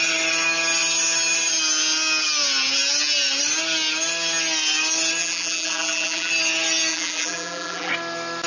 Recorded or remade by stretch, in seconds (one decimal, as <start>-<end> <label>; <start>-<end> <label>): 0.0-5.2 recorded; 5.2-6.3 remade; 6.3-6.9 recorded; 6.9-7.9 remade; 7.9-8.5 recorded